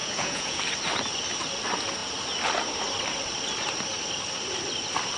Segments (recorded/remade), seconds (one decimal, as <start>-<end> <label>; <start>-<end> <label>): 0.0-0.6 remade; 0.6-5.2 recorded